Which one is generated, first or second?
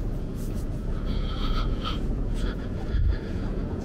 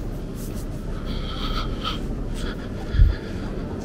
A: first